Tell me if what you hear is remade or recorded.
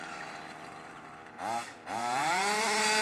remade